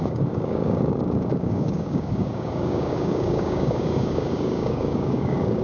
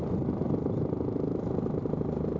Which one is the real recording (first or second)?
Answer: second